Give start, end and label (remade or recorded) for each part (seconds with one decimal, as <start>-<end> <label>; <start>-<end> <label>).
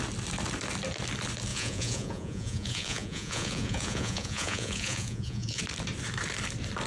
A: 0.0-1.5 recorded; 1.5-5.6 remade; 5.6-6.9 recorded